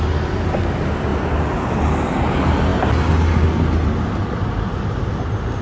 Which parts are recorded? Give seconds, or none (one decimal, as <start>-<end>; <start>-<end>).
0.0-5.6